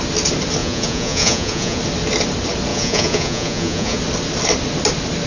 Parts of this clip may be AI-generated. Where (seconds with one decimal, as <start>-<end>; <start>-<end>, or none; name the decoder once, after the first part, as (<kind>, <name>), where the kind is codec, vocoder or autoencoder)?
0.6-1.8 (vocoder, Vocos); 2.7-4.0